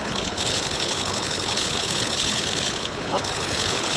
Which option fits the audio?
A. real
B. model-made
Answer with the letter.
B